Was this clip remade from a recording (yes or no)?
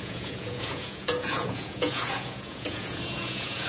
yes